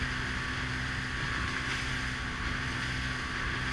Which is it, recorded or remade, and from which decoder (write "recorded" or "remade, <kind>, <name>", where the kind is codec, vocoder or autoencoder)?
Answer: recorded